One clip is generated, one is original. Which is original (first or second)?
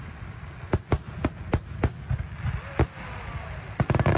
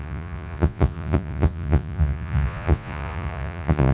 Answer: first